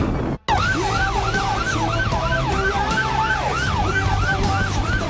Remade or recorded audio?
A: recorded